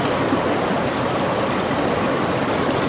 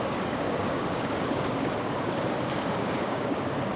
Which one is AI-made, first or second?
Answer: second